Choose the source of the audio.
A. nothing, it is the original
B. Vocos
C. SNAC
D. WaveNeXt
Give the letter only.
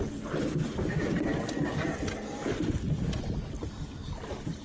A